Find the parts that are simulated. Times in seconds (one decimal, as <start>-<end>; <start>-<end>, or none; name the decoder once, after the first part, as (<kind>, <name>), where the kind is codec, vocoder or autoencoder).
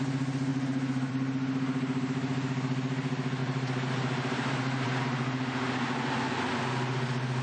0.5-1.1 (vocoder, BigVGAN v2); 3.4-5.0